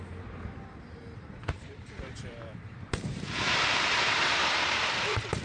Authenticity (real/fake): fake